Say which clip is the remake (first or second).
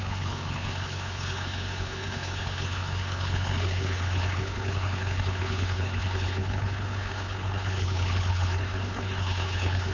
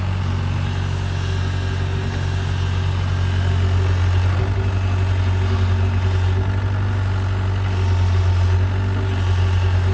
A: first